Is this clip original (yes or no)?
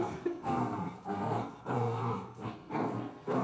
no